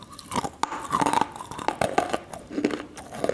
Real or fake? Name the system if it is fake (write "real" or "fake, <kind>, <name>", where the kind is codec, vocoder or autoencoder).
real